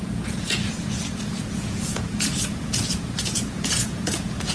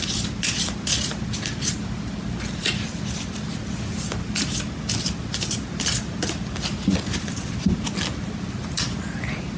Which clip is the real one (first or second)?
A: second